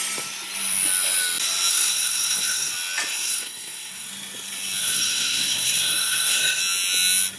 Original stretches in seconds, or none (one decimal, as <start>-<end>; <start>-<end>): 0.0-1.7; 2.7-3.1; 4.1-4.8; 6.6-7.4